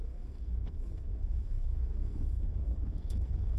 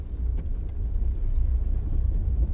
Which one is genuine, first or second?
second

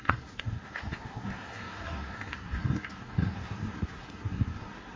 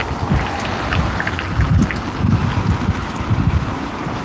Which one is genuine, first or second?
second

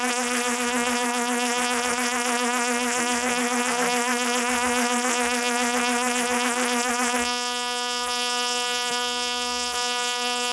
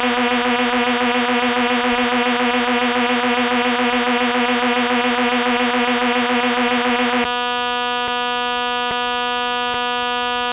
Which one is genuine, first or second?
second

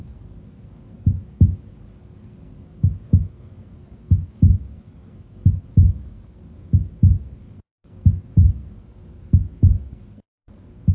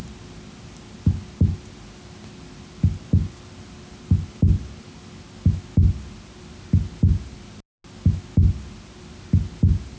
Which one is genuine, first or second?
second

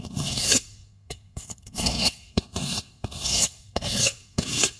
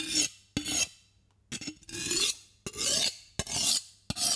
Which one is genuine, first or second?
second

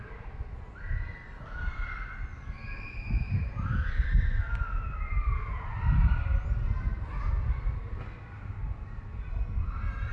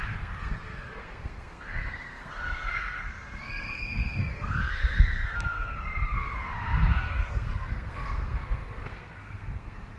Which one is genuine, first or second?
first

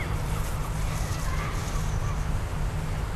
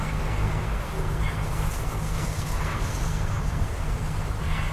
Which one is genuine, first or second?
first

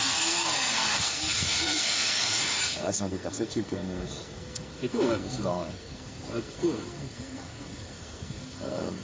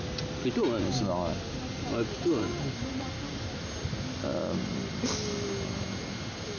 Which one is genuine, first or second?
second